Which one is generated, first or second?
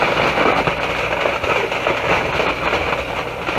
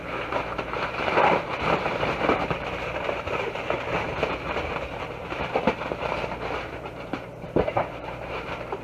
second